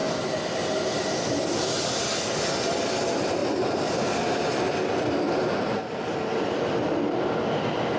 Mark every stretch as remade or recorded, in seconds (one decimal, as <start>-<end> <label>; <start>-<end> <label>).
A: 0.0-8.0 recorded